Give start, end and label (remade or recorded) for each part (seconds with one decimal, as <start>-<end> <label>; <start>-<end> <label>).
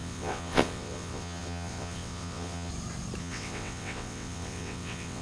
0.0-2.7 remade; 2.7-3.2 recorded; 3.2-5.2 remade